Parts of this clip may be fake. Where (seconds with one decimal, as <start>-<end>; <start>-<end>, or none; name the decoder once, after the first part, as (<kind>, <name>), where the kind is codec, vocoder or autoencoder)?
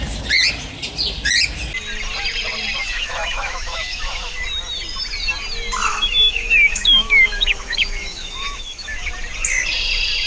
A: 2.8-4.4 (autoencoder, DAC-VAE); 5.9-9.1